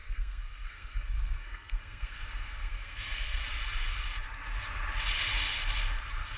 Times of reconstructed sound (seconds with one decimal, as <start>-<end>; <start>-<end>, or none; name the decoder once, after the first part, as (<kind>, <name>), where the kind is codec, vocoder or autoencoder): 0.0-3.4 (codec, SNAC)